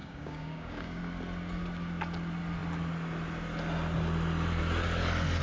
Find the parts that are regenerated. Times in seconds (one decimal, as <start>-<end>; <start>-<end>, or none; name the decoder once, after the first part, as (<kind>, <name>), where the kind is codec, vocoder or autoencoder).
0.0-1.0 (codec, DAC)